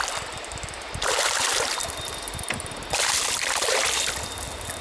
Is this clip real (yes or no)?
yes